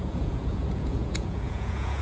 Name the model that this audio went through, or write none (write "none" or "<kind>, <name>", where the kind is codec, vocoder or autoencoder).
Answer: vocoder, Vocos